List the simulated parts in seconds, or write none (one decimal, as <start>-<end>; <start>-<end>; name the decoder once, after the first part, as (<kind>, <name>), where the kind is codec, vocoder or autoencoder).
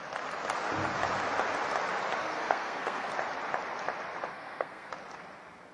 2.2-3.1 (codec, SNAC); 4.3-4.9